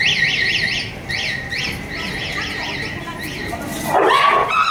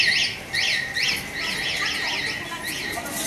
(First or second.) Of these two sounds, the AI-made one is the first